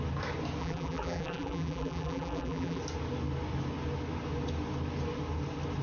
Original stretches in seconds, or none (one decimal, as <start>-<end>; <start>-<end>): 0.0-0.6; 2.8-5.8